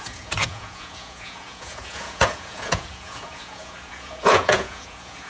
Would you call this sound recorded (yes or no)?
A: no